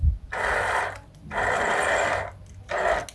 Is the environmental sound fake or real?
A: real